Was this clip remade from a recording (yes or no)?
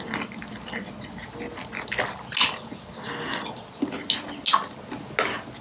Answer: no